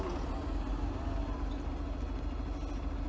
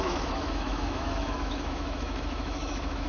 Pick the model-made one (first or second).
second